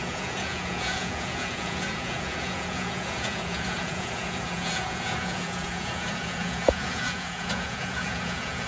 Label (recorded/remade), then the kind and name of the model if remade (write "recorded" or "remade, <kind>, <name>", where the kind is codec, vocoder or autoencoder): remade, vocoder, Vocos